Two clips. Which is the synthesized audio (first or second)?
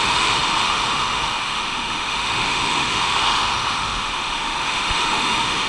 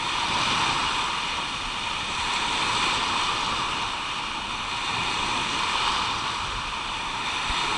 first